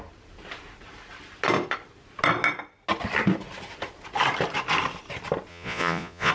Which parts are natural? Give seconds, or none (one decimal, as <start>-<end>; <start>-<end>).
0.0-5.5